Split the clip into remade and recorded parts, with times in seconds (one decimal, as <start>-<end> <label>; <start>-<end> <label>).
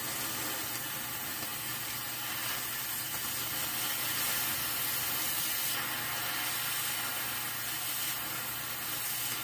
0.0-9.4 recorded